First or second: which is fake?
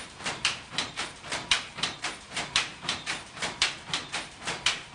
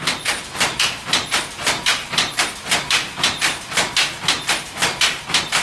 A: first